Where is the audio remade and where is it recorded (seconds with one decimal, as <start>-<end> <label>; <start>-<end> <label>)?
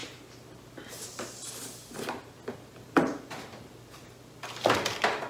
0.0-5.3 recorded